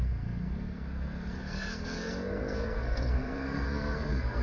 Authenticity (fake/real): fake